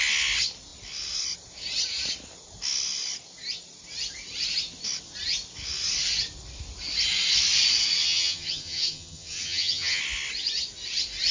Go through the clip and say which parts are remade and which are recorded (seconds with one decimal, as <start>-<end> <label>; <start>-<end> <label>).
0.0-8.0 recorded; 8.0-10.0 remade; 10.0-11.3 recorded